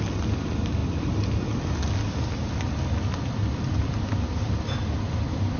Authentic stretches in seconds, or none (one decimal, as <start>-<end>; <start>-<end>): 0.0-5.6